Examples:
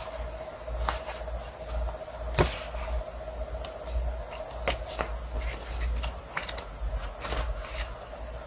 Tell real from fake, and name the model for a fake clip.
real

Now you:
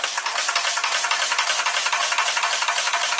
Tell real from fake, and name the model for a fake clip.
real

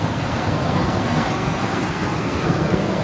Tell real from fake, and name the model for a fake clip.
fake, codec, SNAC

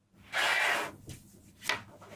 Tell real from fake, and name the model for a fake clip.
real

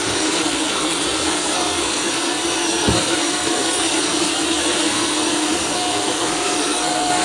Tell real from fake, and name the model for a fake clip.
fake, codec, SNAC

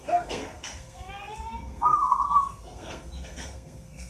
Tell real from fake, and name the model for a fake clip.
fake, codec, SNAC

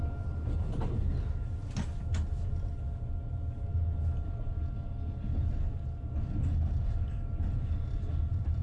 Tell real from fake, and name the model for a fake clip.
real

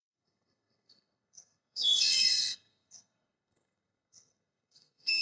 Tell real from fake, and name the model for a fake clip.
fake, codec, SNAC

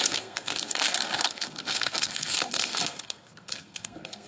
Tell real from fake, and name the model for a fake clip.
fake, codec, SNAC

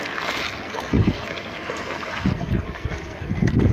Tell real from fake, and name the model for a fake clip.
fake, codec, SNAC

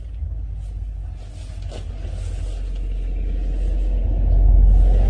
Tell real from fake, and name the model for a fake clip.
real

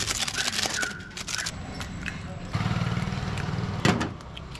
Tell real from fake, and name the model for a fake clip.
real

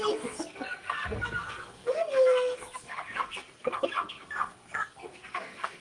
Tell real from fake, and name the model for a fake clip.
fake, codec, SNAC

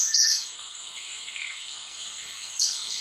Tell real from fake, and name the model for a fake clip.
fake, codec, SNAC